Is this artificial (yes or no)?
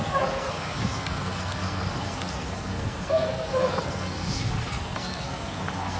yes